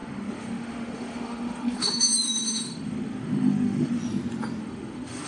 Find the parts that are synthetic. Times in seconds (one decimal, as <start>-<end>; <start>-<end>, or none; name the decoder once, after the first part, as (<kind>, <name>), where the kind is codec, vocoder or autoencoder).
0.0-4.0 (autoencoder, DAC-VAE); 4.6-5.3